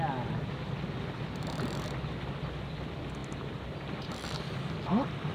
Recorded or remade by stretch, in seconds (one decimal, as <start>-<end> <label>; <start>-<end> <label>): 0.0-3.2 recorded; 3.2-3.9 remade; 3.9-5.3 recorded